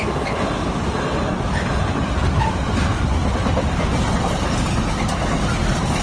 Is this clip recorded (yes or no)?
yes